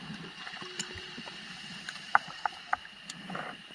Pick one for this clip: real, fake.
fake